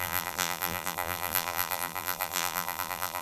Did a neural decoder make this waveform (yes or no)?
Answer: yes